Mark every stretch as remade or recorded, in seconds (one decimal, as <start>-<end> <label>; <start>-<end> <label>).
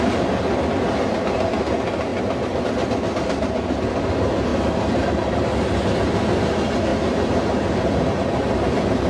0.0-4.5 recorded; 4.5-5.4 remade; 5.4-6.9 recorded; 6.9-9.1 remade